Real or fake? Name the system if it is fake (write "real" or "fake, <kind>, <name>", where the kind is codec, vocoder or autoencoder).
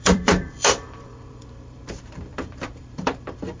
fake, vocoder, BigVGAN v2